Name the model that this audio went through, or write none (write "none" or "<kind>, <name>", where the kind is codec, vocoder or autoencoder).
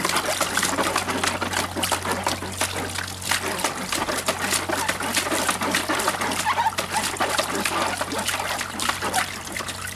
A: none